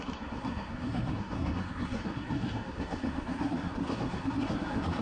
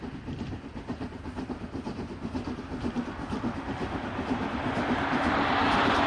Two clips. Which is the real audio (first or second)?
second